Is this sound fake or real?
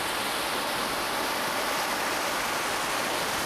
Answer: real